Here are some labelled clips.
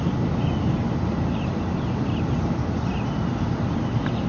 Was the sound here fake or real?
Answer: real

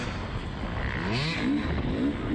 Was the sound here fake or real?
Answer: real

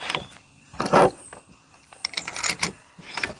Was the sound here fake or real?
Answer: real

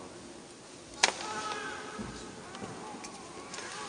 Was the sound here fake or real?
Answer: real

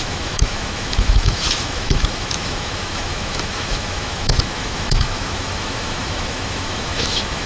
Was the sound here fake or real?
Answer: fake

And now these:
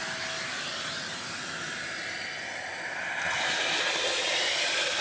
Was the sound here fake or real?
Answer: real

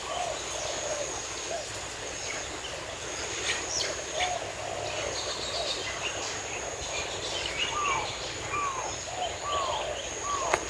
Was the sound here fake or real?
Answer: real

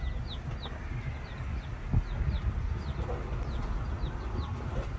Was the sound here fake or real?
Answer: real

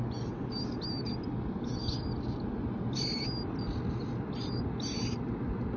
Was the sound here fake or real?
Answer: real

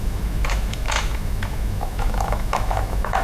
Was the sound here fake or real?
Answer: fake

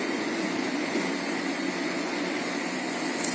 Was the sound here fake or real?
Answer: fake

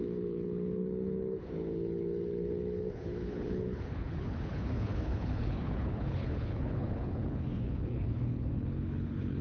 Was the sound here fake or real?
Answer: fake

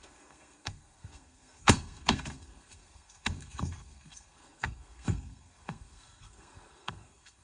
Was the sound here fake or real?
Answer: fake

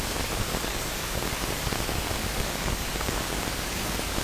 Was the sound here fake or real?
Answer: fake